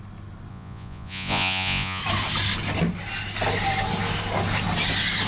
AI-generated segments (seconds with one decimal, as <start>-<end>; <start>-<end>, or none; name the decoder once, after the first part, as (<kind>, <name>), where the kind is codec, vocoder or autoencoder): 0.5-2.0 (vocoder, Vocos)